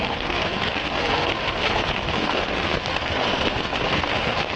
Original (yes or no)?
no